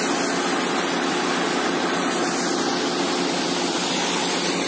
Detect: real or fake real